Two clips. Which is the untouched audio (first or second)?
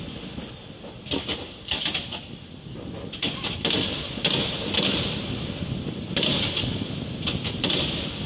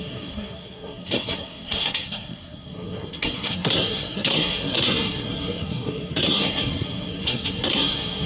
first